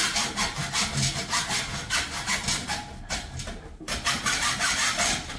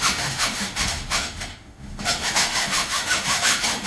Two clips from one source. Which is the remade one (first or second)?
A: second